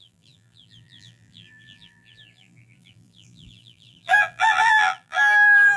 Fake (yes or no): yes